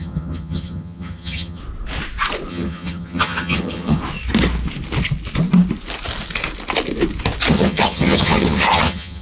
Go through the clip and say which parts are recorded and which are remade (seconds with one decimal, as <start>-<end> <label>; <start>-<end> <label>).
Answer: 0.0-1.6 remade; 1.6-2.5 recorded; 2.5-4.0 remade; 4.0-7.5 recorded; 7.5-9.2 remade